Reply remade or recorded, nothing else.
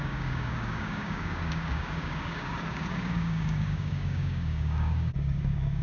remade